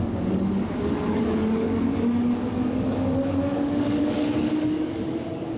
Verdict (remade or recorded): remade